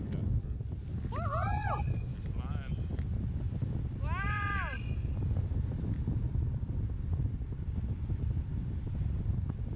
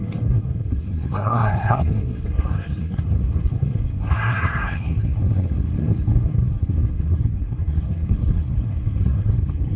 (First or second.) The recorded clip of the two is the first